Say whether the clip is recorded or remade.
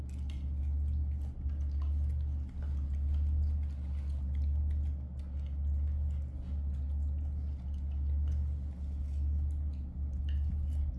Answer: recorded